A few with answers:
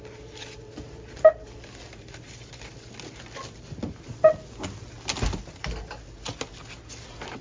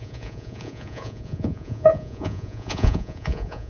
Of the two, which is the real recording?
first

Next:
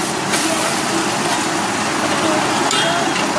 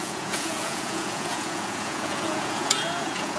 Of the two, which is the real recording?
first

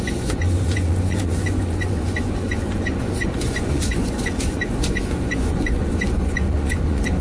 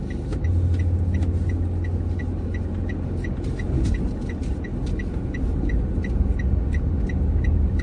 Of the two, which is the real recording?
second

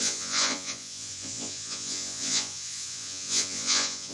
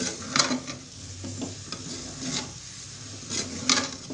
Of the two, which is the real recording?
second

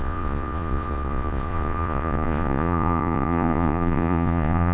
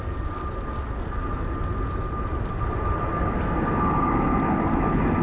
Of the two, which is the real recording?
second